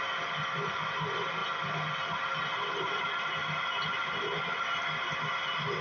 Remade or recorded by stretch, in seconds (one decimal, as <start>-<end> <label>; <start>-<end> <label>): 0.0-5.8 recorded